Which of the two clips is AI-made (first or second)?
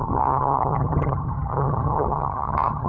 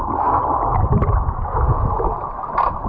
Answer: first